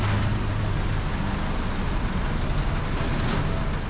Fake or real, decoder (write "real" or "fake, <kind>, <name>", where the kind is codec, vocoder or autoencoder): real